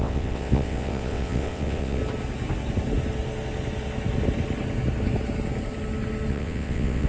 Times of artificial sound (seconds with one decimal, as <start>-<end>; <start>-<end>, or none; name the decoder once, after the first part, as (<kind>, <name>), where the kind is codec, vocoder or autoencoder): 0.0-2.0 (vocoder, WaveNeXt); 6.3-7.1